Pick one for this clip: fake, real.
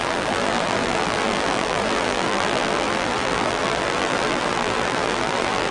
fake